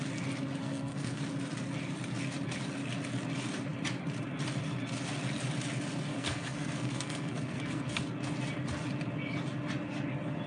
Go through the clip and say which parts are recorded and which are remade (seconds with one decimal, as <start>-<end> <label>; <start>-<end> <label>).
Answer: 0.0-0.6 recorded; 0.6-1.2 remade; 1.2-6.1 recorded; 6.1-8.0 remade; 8.0-10.5 recorded